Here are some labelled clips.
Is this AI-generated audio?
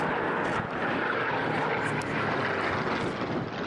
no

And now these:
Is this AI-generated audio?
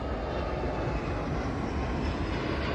no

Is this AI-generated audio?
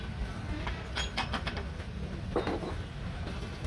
no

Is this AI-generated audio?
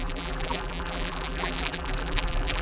yes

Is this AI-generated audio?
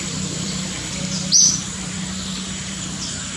yes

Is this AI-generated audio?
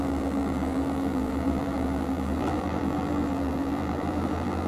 yes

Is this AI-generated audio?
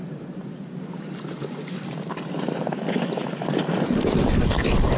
yes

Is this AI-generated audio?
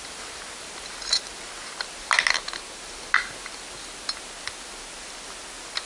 no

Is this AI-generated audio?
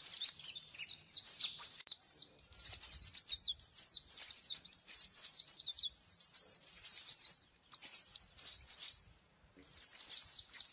yes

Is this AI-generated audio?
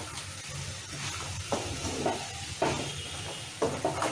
no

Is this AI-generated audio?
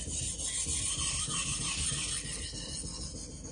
no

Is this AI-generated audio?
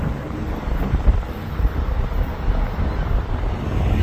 no